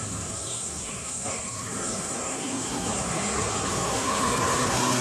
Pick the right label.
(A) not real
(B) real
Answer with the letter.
A